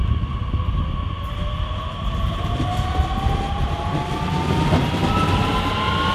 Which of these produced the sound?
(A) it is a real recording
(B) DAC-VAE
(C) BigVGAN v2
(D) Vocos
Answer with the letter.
A